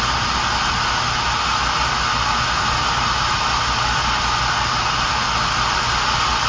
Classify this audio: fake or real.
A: real